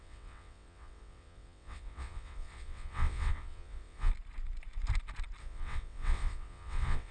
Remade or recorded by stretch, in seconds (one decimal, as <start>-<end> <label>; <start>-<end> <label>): 0.0-4.1 remade; 4.1-5.4 recorded; 5.4-7.1 remade